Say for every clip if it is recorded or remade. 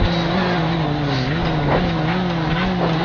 recorded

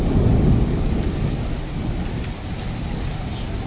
recorded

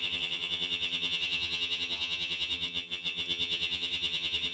remade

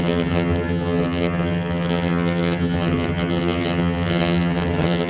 remade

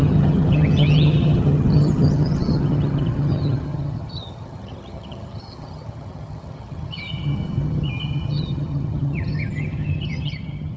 remade